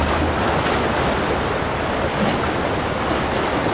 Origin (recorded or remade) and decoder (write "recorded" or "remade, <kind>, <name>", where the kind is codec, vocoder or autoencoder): recorded